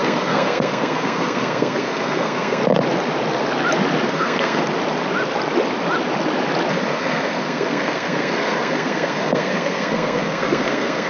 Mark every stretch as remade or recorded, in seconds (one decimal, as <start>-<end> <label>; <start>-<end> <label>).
0.0-2.6 remade; 2.6-4.1 recorded; 4.1-4.6 remade; 4.6-6.7 recorded; 6.7-11.1 remade